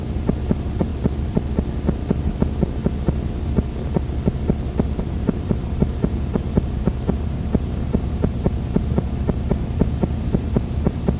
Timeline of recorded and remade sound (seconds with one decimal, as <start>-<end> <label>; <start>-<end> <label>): 0.0-0.9 remade; 0.9-5.0 recorded; 5.0-11.2 remade